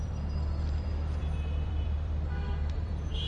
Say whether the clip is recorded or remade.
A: remade